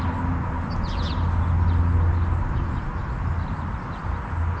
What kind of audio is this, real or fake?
real